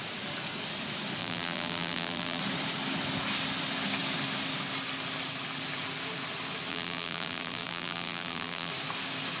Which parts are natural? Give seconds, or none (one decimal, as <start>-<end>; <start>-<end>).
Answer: 0.0-1.2; 2.4-6.7; 8.7-9.4